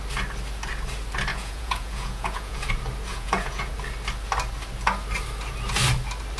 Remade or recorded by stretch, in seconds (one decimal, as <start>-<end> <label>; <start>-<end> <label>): 0.0-1.3 recorded; 1.3-2.7 remade; 2.7-3.1 recorded; 3.1-3.7 remade; 3.7-6.4 recorded

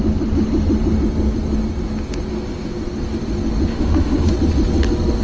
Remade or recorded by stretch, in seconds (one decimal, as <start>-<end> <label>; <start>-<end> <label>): 0.0-3.7 recorded; 3.7-4.3 remade; 4.3-5.2 recorded

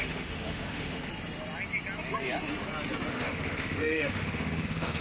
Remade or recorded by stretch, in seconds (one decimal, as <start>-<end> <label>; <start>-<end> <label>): 0.0-1.1 remade; 1.1-3.1 recorded; 3.1-5.0 remade

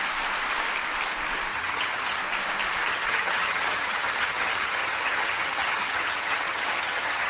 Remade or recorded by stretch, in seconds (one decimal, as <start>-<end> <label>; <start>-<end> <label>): 0.0-1.5 recorded; 1.5-2.2 remade; 2.2-2.9 recorded; 2.9-7.3 remade

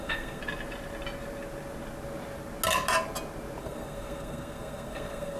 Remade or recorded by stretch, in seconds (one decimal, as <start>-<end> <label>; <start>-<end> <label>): 0.0-0.4 remade; 0.4-3.6 recorded; 3.6-5.4 remade

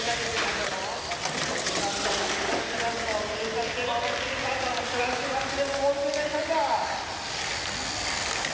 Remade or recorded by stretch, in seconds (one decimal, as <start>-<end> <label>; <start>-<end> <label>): 0.0-8.5 recorded